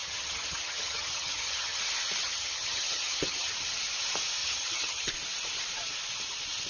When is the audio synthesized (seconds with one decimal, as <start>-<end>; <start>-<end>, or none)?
0.0-1.8; 2.2-3.5; 4.4-5.1